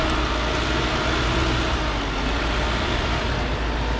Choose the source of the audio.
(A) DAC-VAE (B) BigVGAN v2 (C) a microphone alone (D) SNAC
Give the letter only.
C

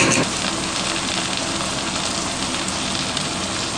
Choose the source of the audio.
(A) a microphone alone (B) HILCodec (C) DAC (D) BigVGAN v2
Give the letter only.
A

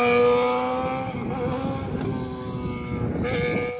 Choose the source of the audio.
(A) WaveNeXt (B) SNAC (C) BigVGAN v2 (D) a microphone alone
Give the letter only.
D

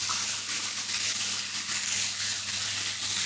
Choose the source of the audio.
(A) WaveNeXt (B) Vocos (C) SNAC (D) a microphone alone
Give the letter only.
D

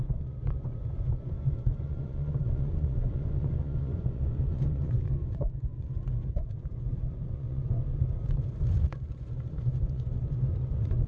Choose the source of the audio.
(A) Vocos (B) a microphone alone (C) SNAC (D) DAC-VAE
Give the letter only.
A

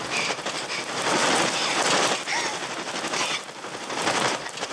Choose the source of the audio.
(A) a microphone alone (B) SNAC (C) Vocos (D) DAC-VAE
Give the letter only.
A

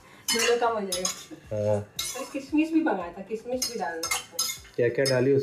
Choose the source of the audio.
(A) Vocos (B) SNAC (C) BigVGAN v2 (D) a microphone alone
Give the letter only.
D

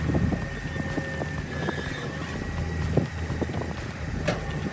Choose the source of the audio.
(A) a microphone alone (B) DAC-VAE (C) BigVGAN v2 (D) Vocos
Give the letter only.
A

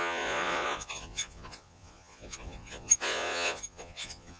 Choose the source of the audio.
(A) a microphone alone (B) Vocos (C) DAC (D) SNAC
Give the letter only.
B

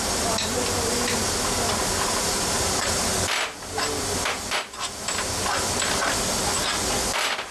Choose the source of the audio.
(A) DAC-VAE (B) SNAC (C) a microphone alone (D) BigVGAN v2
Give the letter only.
C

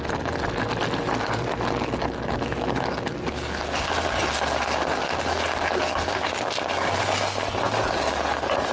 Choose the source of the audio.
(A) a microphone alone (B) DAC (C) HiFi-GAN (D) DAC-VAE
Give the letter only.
A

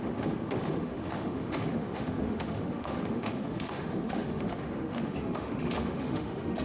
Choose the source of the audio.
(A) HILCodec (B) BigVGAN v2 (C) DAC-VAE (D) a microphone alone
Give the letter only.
C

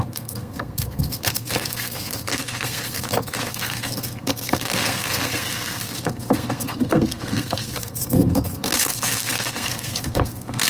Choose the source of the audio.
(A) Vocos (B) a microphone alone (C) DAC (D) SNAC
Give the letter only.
D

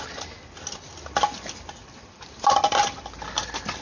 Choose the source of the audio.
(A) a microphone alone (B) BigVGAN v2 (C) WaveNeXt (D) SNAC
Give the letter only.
A